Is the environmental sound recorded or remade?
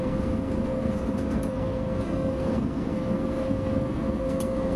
remade